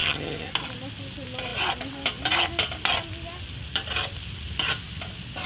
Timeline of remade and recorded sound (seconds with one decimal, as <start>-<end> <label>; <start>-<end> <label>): 0.0-0.5 remade; 0.5-5.5 recorded